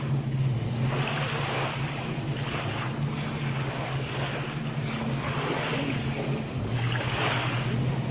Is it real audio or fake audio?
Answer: real